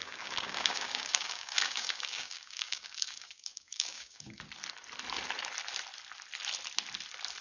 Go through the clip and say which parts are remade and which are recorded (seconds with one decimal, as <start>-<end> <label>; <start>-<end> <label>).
0.0-4.4 remade; 4.4-7.4 recorded